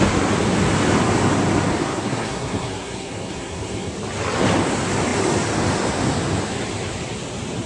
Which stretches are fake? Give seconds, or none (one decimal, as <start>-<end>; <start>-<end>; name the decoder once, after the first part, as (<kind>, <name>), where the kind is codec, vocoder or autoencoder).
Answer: 1.8-3.9 (codec, SNAC)